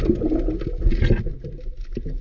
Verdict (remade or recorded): recorded